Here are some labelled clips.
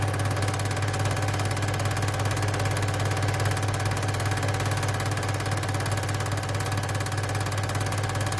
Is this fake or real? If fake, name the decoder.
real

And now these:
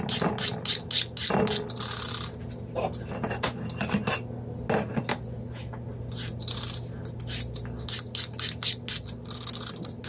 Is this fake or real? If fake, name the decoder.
real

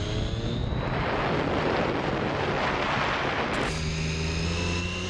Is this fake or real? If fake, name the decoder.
real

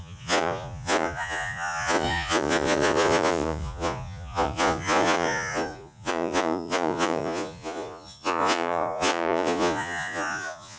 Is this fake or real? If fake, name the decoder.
fake, vocoder, Vocos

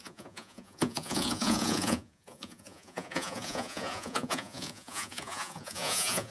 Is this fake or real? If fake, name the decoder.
fake, vocoder, Vocos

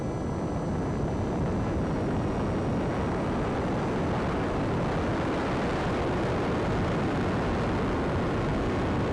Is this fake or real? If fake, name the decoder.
real